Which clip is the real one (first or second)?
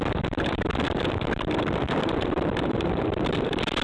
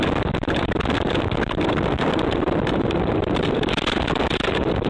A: second